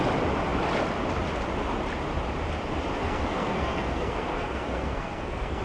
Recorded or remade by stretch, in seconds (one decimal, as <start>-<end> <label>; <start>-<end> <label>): 0.0-3.0 recorded; 3.0-5.6 remade